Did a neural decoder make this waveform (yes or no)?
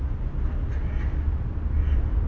no